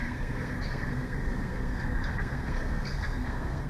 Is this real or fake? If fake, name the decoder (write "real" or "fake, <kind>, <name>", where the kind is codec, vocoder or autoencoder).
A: fake, codec, SNAC